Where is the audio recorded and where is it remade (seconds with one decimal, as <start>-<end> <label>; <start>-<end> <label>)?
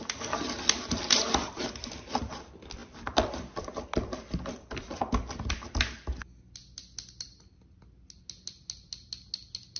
0.0-9.8 recorded